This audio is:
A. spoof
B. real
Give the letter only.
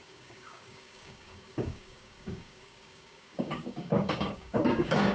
A